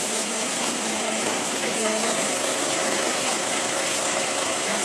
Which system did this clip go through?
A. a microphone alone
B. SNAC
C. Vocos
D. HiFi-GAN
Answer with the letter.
B